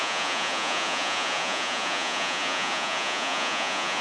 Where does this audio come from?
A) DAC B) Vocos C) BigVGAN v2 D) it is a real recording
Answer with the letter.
B